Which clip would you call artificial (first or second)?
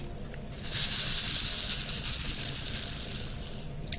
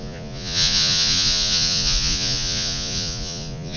second